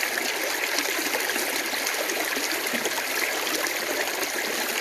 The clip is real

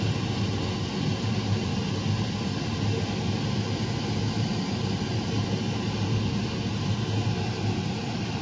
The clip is real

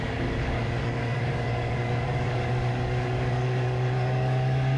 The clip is fake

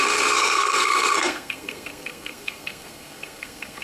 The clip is fake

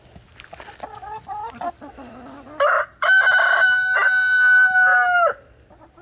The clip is real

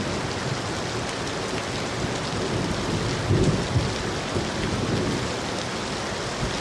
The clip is real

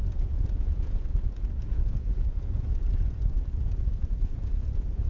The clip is fake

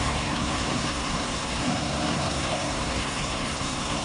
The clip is fake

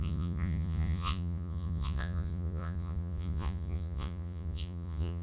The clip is fake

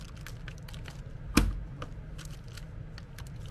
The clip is real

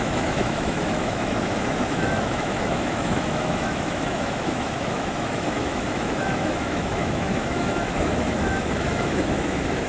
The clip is fake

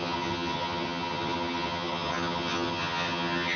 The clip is fake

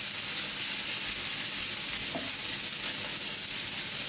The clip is real